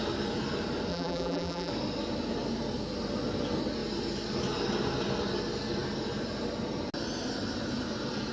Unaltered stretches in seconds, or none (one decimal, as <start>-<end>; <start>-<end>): 0.0-0.9; 1.7-8.3